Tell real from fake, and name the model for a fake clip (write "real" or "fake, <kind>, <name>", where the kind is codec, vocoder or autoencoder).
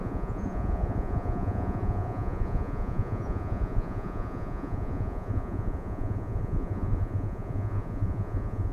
fake, vocoder, Vocos